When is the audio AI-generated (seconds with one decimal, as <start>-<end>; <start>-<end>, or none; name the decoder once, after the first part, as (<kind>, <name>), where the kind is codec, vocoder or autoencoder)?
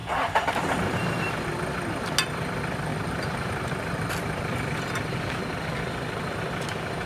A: 0.0-1.3 (vocoder, BigVGAN v2); 2.9-4.1